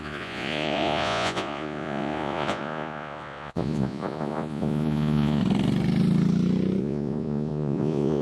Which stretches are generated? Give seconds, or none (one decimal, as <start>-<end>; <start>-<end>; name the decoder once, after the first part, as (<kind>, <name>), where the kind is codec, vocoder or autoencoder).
0.0-5.4 (vocoder, Vocos); 6.8-8.2